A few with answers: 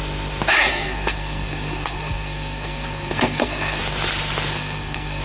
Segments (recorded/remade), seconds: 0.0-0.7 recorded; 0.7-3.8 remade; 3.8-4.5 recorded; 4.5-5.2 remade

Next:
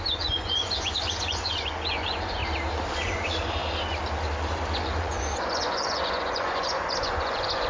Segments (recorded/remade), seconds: 0.0-2.4 remade; 2.4-2.9 recorded; 2.9-3.6 remade; 3.6-4.7 recorded; 4.7-7.7 remade

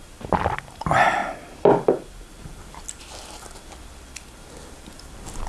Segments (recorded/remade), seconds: 0.0-1.2 recorded; 1.2-3.0 remade; 3.0-5.5 recorded